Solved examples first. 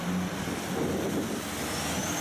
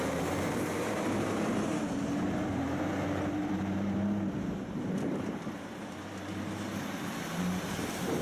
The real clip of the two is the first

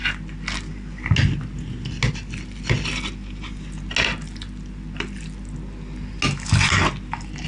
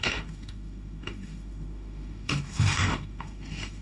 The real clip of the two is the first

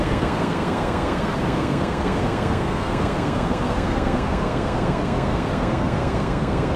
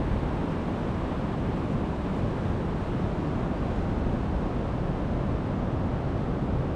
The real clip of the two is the second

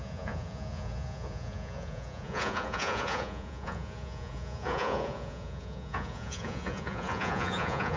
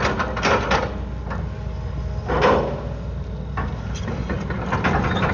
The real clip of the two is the second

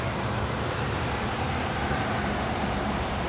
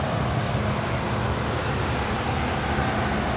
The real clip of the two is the second